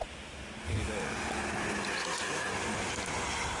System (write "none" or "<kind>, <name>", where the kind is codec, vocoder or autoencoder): none